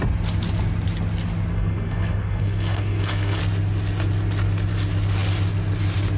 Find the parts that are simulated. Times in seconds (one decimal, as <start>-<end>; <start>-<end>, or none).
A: 1.5-3.4